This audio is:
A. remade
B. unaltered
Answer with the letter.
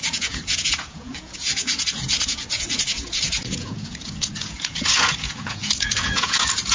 A